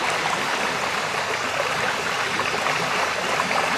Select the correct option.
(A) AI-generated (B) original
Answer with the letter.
B